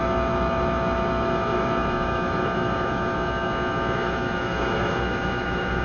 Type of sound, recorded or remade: remade